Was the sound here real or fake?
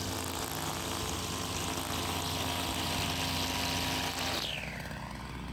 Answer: real